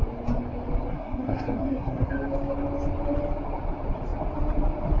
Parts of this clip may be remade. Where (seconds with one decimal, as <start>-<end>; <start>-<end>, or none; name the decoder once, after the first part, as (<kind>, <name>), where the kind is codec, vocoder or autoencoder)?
0.9-2.1 (codec, SNAC)